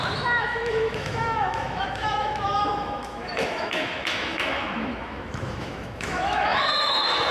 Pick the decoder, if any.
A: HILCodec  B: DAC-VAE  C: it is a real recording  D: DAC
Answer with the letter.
B